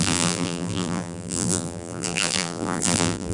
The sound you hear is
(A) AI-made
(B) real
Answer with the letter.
A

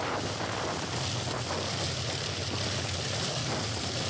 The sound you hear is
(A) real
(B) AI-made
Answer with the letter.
A